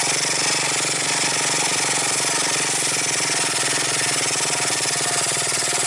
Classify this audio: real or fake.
real